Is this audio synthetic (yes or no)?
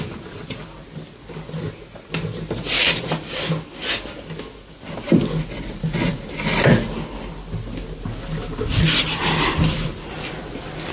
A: no